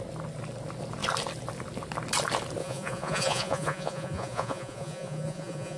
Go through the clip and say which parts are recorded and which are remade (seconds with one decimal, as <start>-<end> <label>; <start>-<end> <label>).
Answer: 0.0-2.6 recorded; 2.6-5.8 remade